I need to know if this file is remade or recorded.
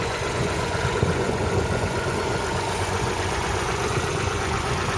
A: remade